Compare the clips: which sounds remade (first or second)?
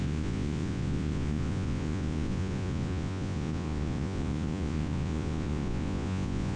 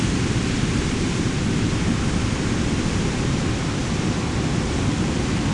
first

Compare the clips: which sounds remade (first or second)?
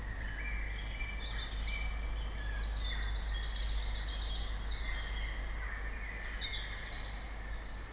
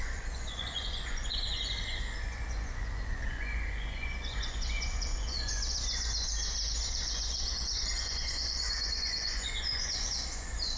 second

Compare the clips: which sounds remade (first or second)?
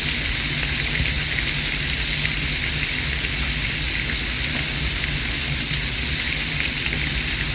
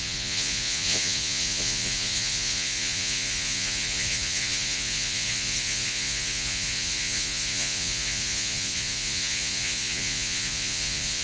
second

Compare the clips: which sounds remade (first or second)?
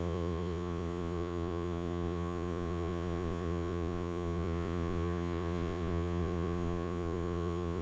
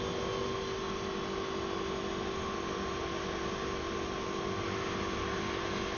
first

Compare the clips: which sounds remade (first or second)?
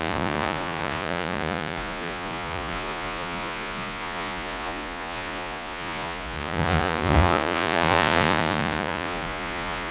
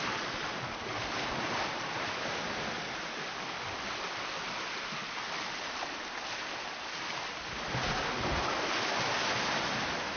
first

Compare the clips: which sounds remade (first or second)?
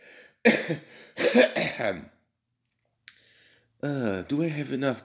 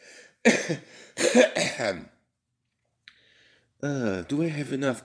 second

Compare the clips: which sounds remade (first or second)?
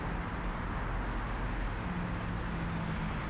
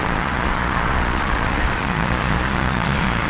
second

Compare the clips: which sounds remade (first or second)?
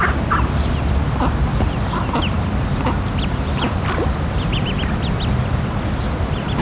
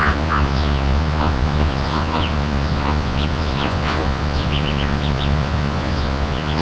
second